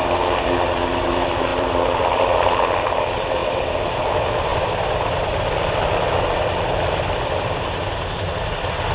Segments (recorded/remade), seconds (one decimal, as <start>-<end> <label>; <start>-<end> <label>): 0.0-1.5 recorded; 1.5-2.2 remade; 2.2-3.4 recorded; 3.4-4.1 remade; 4.1-8.9 recorded